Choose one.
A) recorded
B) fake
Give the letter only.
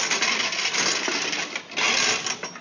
A